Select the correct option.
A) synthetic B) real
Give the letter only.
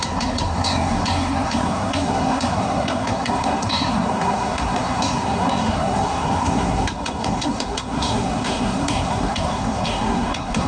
A